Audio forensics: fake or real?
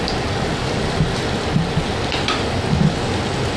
real